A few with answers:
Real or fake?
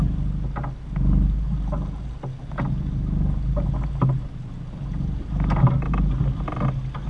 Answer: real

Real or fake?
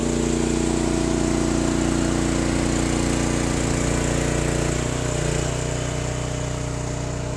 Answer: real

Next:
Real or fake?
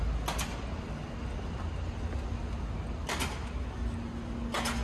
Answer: real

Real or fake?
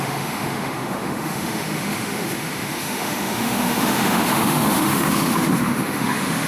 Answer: fake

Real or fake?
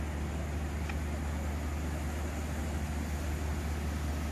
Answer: real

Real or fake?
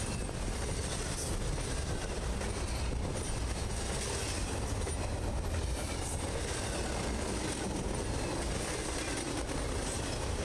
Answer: real